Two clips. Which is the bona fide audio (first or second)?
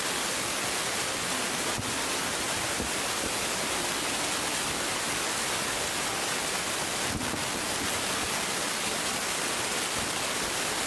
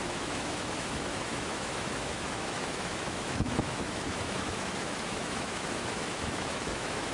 first